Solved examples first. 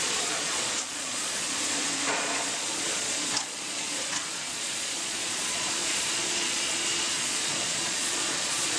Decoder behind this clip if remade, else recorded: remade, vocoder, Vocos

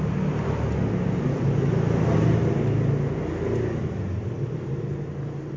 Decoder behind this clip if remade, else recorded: recorded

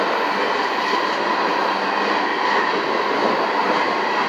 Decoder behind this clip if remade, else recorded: recorded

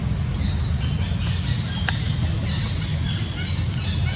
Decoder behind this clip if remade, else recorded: recorded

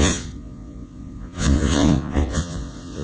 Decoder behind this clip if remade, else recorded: remade, vocoder, Vocos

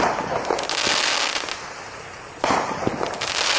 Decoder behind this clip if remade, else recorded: recorded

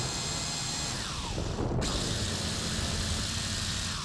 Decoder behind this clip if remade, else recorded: recorded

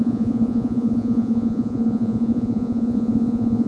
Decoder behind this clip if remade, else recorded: remade, vocoder, Vocos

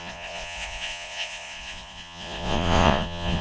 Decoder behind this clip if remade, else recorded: remade, vocoder, Vocos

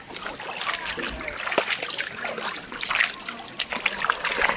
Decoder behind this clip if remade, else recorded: recorded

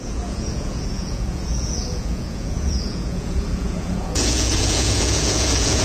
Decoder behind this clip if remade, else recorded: remade, vocoder, Vocos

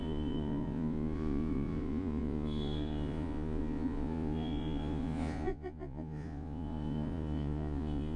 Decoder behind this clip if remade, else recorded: remade, vocoder, Vocos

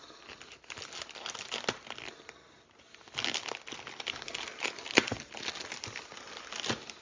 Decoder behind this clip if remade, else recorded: recorded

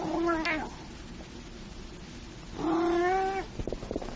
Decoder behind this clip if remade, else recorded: recorded